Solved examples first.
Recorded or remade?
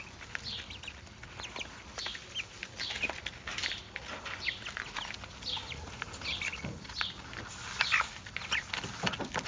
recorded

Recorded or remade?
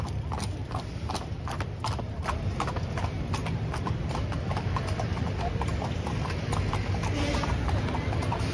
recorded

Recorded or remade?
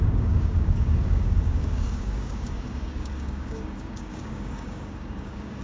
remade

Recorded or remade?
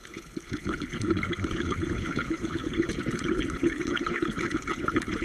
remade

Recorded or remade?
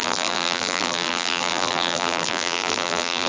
remade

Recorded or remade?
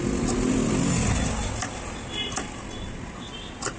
recorded